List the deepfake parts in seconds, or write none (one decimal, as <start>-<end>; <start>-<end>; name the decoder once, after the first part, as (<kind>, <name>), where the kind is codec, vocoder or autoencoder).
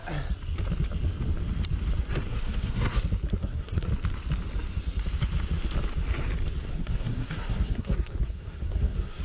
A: 2.3-3.0 (codec, SNAC); 3.4-3.9; 6.7-9.2